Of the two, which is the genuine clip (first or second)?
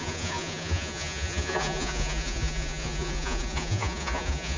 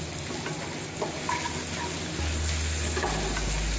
second